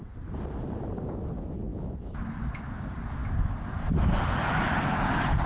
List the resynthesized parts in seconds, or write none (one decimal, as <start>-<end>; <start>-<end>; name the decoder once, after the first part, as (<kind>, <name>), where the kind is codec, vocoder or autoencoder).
1.7-2.2 (autoencoder, DAC-VAE)